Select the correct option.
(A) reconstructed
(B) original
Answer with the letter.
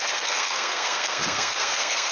A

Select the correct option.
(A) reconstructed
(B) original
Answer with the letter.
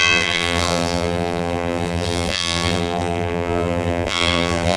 A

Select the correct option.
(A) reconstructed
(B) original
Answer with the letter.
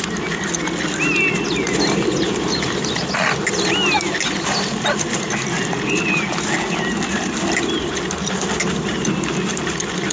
B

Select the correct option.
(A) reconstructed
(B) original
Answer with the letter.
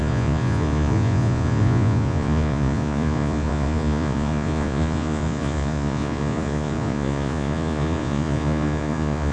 A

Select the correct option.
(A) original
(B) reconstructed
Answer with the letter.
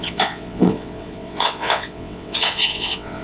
B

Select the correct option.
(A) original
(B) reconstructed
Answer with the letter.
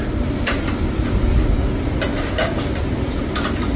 A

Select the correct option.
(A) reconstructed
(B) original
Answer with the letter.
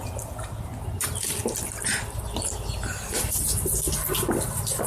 B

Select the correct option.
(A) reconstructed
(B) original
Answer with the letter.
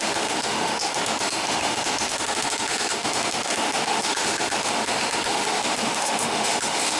A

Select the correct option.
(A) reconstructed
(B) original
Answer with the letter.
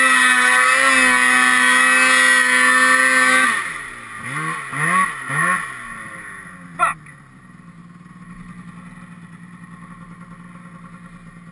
B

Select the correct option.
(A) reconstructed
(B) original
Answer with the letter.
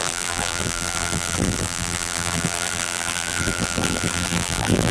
A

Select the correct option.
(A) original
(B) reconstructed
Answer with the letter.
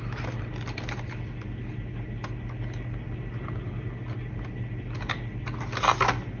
A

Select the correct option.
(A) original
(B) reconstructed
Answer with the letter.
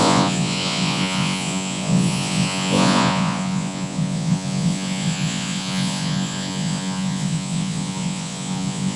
B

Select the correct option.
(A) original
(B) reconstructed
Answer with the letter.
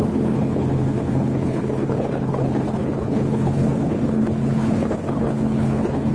B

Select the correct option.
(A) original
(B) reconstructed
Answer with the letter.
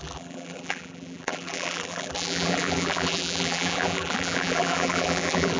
B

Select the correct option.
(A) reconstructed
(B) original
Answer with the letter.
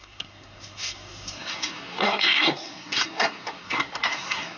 A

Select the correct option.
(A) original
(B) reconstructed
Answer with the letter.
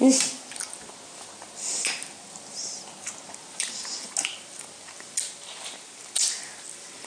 A